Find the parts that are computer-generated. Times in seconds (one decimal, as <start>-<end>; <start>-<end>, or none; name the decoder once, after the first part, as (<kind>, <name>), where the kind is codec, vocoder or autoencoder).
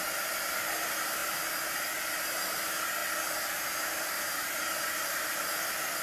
0.0-3.0 (vocoder, BigVGAN v2); 3.8-6.0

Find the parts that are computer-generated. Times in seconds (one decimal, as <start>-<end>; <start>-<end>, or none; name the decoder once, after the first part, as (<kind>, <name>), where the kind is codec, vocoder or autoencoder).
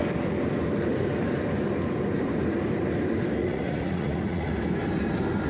3.4-4.5 (vocoder, Vocos)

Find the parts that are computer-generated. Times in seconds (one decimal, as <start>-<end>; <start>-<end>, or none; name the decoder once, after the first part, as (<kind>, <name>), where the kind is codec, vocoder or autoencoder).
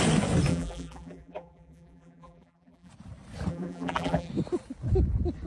0.5-2.9 (vocoder, BigVGAN v2); 3.5-4.3